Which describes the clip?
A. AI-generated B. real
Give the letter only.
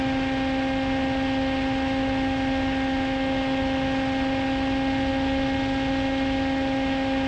B